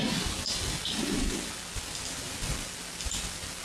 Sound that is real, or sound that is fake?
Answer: real